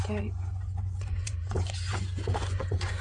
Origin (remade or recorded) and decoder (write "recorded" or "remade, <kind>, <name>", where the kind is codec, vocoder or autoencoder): remade, vocoder, Vocos